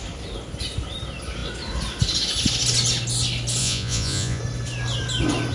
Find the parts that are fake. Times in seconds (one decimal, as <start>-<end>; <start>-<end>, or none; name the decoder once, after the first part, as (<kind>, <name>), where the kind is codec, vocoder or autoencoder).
3.6-4.4 (vocoder, Vocos)